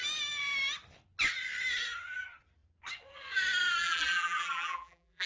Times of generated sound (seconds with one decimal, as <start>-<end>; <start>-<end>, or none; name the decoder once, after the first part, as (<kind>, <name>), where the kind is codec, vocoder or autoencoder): 3.8-5.3 (vocoder, BigVGAN v2)